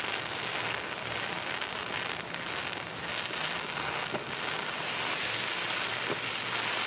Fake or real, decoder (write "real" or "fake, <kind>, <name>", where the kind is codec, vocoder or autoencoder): real